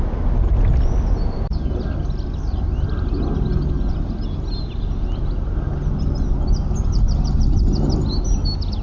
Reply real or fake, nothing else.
real